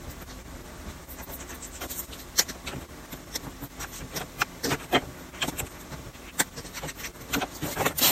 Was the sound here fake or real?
real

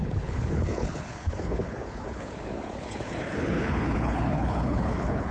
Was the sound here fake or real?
fake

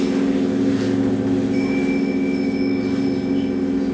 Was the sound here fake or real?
real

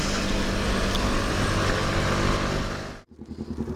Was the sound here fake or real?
real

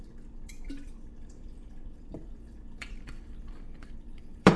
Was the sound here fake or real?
fake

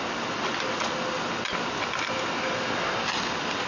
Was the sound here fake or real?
real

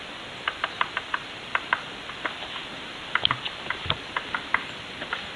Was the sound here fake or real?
real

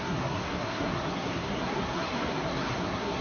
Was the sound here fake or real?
fake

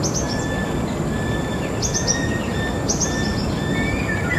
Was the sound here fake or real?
real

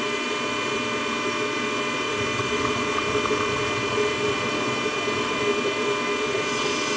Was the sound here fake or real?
fake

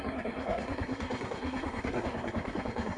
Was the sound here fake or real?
fake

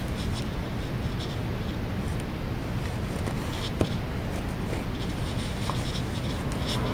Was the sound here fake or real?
real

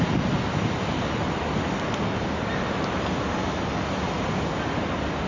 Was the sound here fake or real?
real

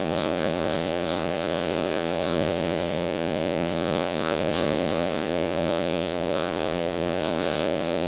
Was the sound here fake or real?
fake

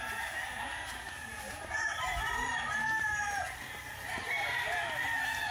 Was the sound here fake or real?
real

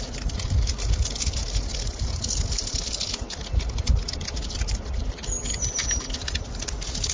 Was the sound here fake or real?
real